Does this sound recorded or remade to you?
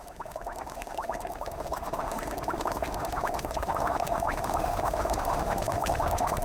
remade